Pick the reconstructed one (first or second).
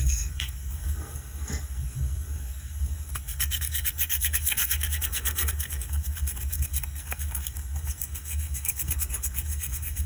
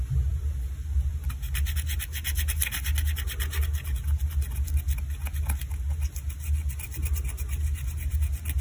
first